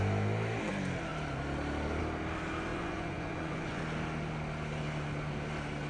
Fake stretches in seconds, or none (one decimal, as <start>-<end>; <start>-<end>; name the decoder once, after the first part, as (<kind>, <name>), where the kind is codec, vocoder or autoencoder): 2.7-3.8 (vocoder, Vocos)